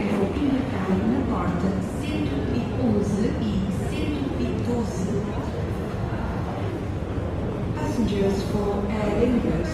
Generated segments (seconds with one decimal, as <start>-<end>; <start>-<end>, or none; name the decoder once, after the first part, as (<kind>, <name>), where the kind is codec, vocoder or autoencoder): 0.0-1.0 (autoencoder, DAC-VAE); 5.6-6.7